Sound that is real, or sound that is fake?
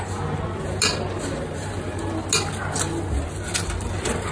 real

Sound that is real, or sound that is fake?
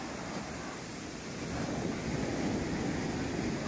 real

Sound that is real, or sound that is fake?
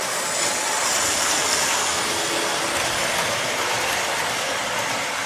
real